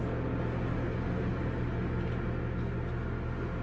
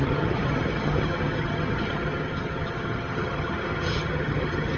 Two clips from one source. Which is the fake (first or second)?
second